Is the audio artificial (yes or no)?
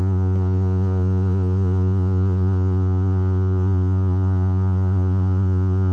yes